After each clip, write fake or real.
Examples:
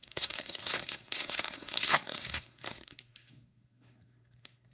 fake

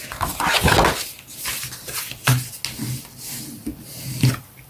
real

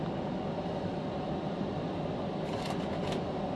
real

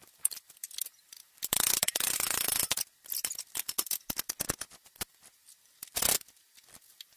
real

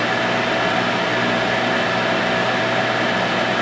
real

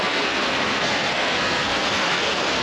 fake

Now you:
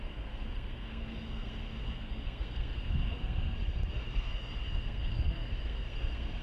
fake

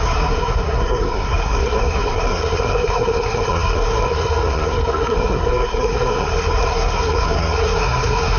fake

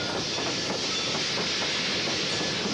real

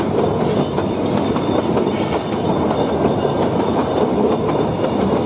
real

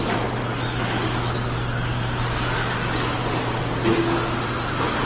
real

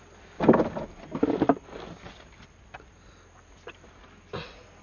real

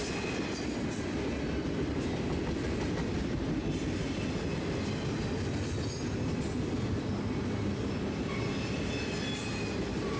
real